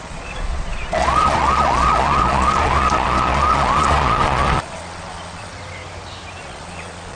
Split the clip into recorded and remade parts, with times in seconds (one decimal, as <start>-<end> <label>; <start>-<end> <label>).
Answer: 0.0-5.5 remade; 5.5-6.4 recorded; 6.4-7.2 remade